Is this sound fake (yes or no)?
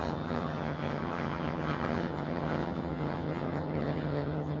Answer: yes